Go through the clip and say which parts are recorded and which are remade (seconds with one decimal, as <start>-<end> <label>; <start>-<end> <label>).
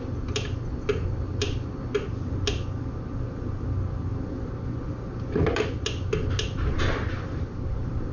0.0-8.1 recorded